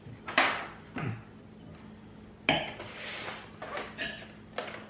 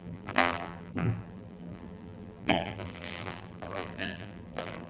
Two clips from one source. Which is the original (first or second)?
first